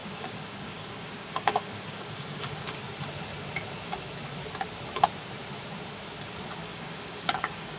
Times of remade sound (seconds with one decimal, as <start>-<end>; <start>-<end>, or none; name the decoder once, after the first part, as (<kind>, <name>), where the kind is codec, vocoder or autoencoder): 0.0-2.8 (codec, DAC); 6.6-7.8